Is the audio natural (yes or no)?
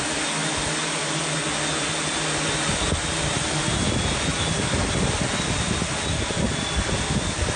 yes